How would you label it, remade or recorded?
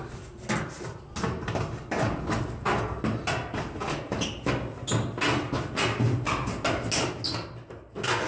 recorded